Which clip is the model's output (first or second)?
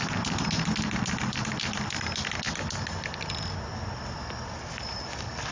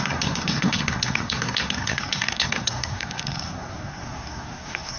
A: second